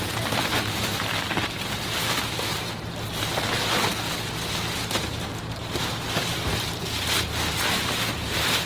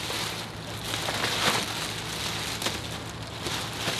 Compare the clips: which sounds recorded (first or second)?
second